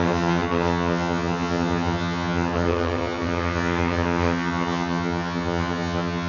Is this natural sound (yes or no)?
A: no